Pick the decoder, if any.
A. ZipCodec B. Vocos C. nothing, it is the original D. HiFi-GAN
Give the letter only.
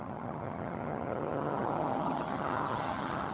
D